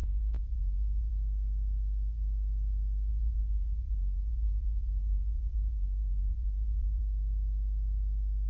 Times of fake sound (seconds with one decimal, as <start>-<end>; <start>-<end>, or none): 0.0-1.1; 3.1-7.0

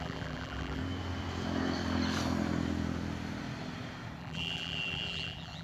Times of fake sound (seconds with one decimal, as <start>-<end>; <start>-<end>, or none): 0.0-0.8; 4.2-5.6

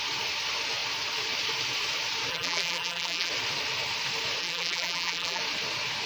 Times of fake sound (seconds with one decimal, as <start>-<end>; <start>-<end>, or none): 2.3-3.3; 4.4-5.4

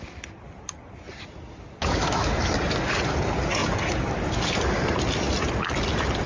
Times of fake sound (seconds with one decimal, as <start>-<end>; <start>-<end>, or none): 1.8-2.5

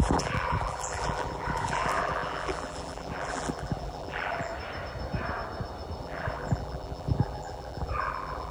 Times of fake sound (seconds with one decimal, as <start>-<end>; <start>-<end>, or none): 0.0-4.5; 6.0-8.5

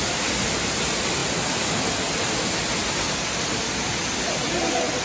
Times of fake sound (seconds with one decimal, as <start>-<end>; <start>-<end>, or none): none

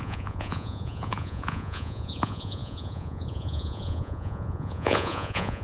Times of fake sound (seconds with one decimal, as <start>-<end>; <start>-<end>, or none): 0.0-5.6